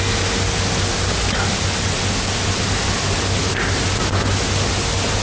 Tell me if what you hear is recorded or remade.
recorded